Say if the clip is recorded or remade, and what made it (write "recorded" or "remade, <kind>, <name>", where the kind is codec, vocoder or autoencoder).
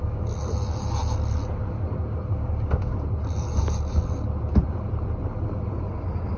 recorded